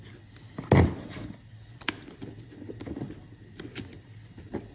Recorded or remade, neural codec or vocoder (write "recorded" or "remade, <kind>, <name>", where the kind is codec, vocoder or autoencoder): recorded